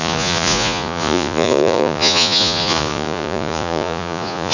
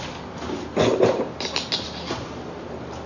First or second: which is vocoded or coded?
first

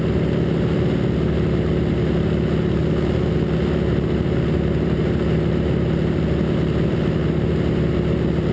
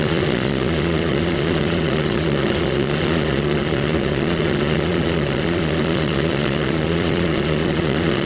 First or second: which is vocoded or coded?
second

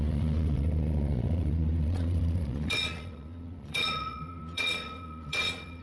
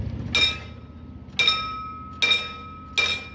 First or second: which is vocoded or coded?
first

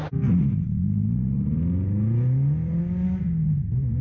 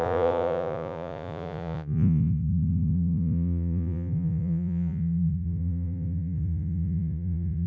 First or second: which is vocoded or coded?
second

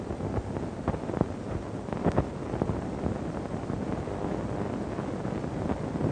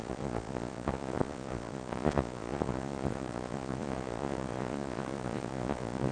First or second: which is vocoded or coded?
second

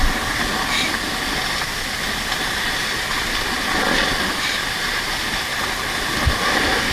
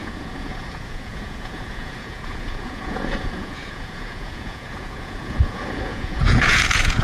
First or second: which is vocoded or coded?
second